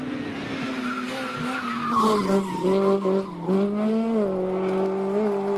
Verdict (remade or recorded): recorded